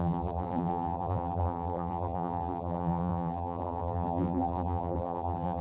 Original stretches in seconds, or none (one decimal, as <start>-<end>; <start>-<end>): none